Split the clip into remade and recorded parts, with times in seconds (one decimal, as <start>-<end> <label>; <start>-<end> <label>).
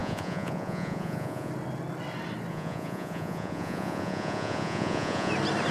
0.0-1.5 remade; 1.5-2.5 recorded; 2.5-5.3 remade; 5.3-5.7 recorded